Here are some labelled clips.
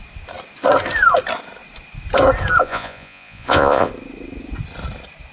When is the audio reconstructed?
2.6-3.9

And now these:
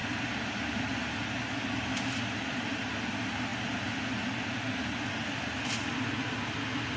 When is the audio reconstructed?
none

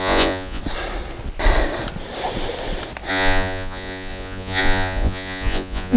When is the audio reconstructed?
0.0-0.6; 3.1-6.0